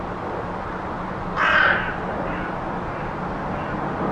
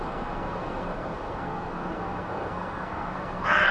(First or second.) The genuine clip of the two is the first